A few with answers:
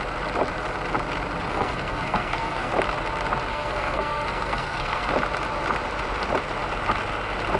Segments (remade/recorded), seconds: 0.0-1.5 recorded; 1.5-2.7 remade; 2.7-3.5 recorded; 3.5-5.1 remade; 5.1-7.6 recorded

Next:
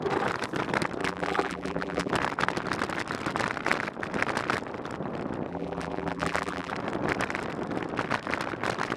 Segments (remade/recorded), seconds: 0.0-1.0 recorded; 1.0-2.1 remade; 2.1-5.5 recorded; 5.5-6.7 remade; 6.7-9.0 recorded

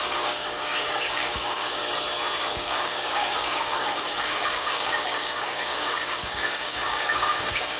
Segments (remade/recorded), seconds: 0.0-1.8 remade; 1.8-2.5 recorded; 2.5-7.8 remade

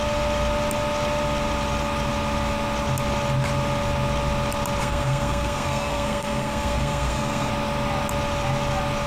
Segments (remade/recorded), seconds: 0.0-4.8 recorded; 4.8-7.5 remade; 7.5-9.1 recorded

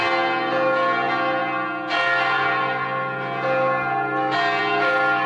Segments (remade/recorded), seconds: 0.0-5.3 recorded